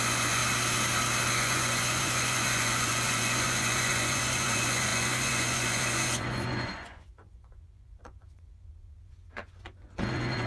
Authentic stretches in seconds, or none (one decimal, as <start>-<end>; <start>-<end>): 0.4-1.3